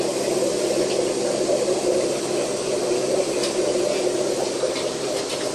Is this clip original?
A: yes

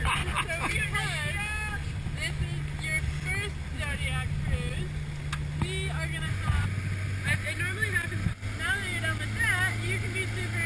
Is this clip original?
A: yes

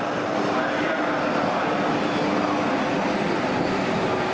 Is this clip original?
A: yes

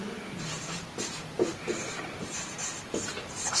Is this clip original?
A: no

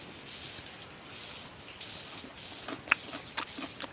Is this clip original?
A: yes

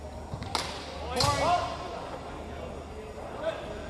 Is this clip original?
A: yes